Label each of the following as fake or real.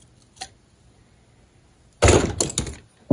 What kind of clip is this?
real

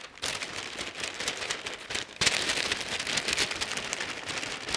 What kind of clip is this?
real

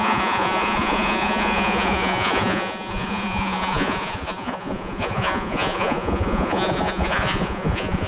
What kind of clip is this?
fake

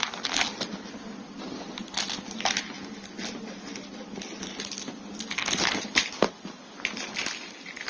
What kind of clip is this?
real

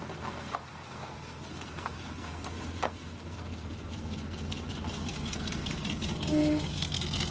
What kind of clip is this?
fake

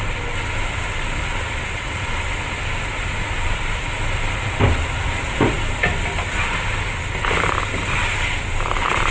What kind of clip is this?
real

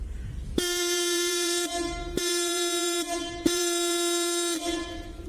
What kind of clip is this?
fake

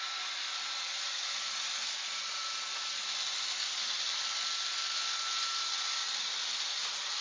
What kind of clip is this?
real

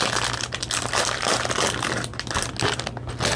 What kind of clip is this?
real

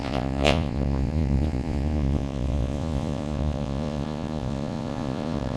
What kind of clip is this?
fake